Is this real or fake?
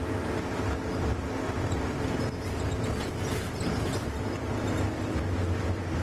real